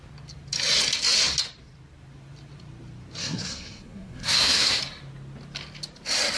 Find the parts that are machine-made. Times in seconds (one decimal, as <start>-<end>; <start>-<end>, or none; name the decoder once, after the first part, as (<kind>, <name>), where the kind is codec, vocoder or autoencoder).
3.2-4.8 (codec, SNAC)